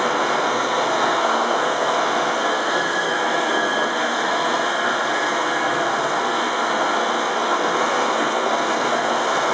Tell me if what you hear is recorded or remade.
remade